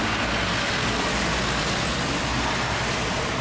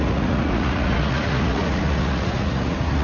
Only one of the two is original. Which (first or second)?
first